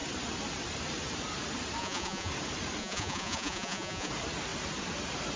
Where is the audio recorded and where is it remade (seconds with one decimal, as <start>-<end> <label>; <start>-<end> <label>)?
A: 0.0-1.8 recorded; 1.8-2.3 remade; 2.3-2.8 recorded; 2.8-4.1 remade; 4.1-5.4 recorded